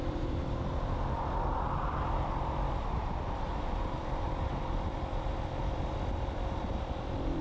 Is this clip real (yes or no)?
no